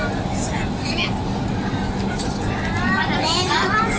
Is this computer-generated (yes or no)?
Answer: no